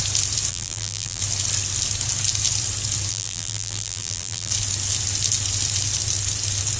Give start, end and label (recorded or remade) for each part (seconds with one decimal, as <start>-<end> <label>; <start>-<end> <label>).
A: 0.0-0.5 recorded; 0.5-1.2 remade; 1.2-3.1 recorded; 3.1-4.5 remade; 4.5-6.8 recorded